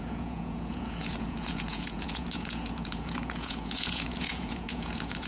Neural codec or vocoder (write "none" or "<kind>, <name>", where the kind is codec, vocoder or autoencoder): vocoder, Vocos